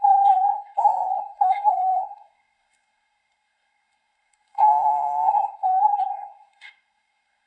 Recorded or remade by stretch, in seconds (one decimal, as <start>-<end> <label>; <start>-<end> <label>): 0.0-7.5 remade